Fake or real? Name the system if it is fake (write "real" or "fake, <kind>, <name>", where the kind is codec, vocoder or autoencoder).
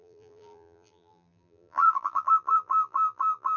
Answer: fake, vocoder, BigVGAN v2